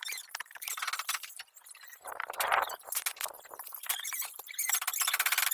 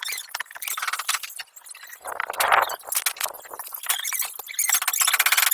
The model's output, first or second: first